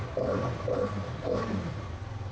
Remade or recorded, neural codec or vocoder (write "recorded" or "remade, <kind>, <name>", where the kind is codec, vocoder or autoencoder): recorded